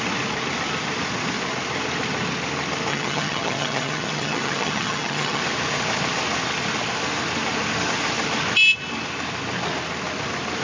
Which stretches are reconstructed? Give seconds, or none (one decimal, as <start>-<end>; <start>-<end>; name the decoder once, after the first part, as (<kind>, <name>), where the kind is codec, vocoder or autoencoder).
2.9-5.4 (vocoder, HiFi-GAN)